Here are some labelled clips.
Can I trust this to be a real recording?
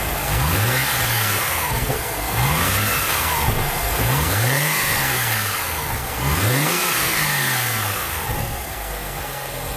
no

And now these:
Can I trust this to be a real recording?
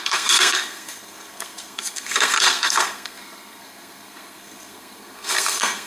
no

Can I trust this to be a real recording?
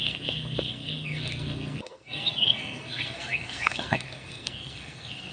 no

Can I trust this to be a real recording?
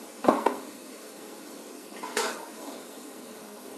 no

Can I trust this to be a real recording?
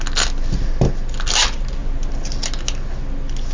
yes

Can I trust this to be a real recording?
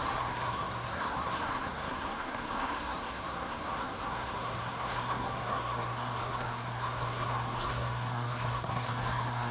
no